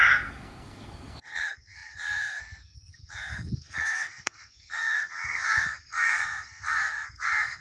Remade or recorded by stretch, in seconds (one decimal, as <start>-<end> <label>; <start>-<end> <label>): 0.0-7.6 remade